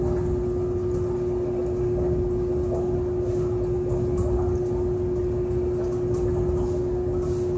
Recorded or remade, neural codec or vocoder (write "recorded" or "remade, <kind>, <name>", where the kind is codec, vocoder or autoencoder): recorded